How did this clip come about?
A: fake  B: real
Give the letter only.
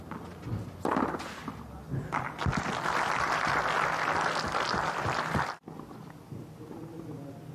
B